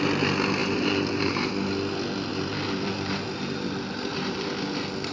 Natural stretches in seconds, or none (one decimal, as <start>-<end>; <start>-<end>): 0.0-0.6; 1.5-2.3; 4.5-5.1